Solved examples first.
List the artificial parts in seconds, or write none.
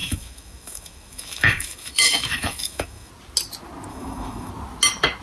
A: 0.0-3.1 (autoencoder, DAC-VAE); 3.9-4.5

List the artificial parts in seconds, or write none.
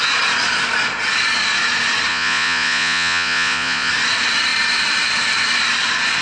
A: 2.1-3.9 (vocoder, Vocos)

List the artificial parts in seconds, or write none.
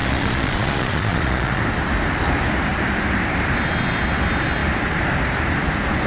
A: 0.0-1.6 (vocoder, Vocos)